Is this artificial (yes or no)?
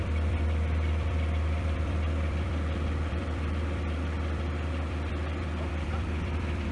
yes